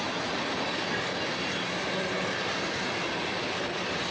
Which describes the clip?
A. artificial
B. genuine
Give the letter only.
B